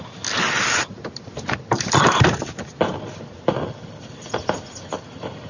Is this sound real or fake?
real